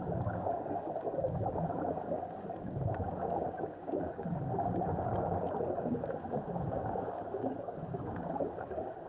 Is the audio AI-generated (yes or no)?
yes